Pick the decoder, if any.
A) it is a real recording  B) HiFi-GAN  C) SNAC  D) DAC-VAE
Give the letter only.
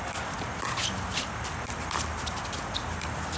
A